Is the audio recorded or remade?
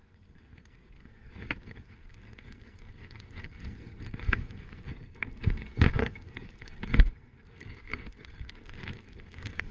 remade